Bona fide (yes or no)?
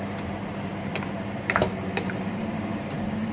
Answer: no